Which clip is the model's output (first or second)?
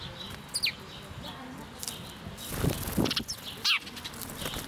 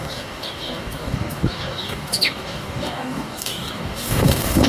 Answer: second